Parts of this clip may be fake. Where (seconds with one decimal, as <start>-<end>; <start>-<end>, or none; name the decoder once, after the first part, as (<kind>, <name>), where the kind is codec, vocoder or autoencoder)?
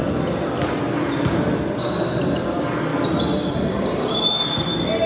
none